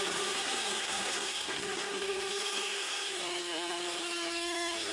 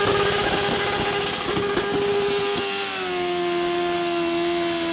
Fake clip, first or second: first